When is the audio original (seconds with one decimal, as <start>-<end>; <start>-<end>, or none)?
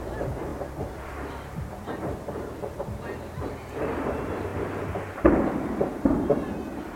0.5-1.3; 4.5-5.1